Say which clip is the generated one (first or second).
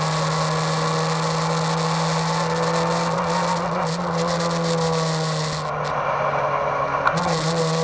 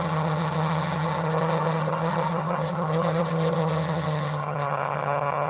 second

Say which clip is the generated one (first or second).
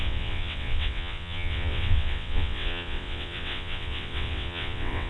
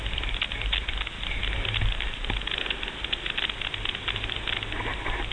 first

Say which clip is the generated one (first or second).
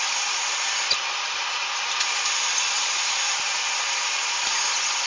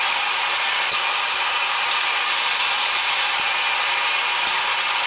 first